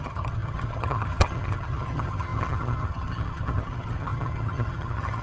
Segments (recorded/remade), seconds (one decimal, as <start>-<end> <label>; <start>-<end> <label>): 0.0-5.2 remade